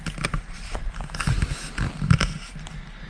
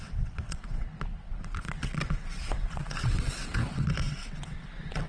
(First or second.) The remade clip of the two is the second